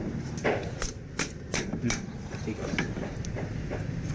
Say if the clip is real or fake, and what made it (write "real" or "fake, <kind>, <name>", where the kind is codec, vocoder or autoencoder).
real